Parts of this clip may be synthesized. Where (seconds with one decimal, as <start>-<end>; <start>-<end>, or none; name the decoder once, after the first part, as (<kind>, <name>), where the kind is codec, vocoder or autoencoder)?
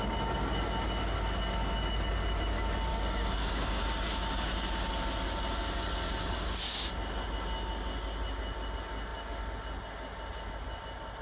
2.9-3.8 (codec, DAC); 6.2-6.9